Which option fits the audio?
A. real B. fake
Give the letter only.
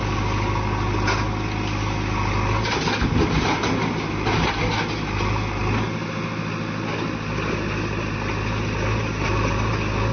A